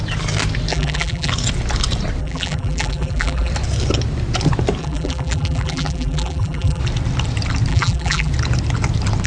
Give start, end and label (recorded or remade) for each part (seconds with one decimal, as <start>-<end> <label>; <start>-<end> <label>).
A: 0.0-0.7 recorded; 0.7-1.3 remade; 1.3-2.2 recorded; 2.2-3.5 remade; 3.5-4.8 recorded; 4.8-6.8 remade; 6.8-7.7 recorded; 7.7-8.3 remade; 8.3-9.3 recorded